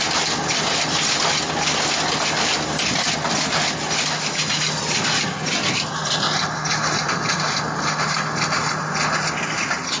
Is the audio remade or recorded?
recorded